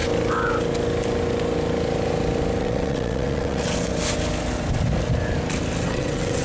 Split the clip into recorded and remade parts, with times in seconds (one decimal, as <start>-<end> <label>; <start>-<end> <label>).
0.0-2.6 recorded; 2.6-3.9 remade; 3.9-5.8 recorded; 5.8-6.4 remade